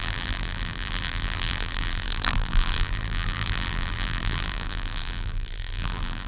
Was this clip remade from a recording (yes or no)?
yes